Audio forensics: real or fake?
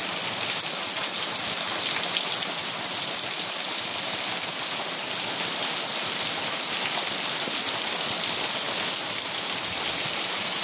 real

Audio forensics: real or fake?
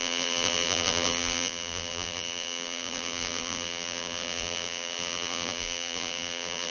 fake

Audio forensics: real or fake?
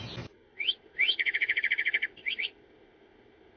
real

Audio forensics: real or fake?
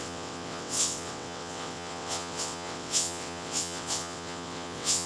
fake